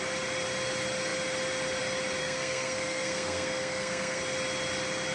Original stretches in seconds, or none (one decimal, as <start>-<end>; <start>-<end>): 0.0-2.2; 4.2-5.1